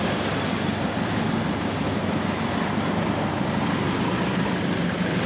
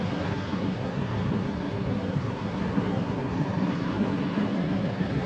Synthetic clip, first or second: second